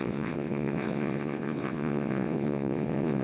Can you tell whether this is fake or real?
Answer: fake